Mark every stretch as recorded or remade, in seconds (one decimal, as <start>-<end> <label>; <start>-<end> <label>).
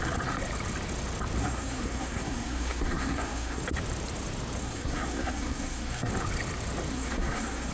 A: 0.0-1.4 recorded; 1.4-3.6 remade; 3.6-4.6 recorded; 4.6-6.1 remade; 6.1-6.9 recorded; 6.9-7.7 remade